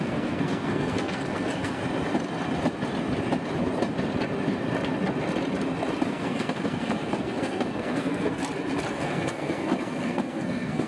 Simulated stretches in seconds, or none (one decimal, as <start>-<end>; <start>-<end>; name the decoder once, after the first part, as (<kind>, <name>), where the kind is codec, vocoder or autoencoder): 0.0-1.8 (codec, SNAC); 6.1-8.4; 8.9-10.9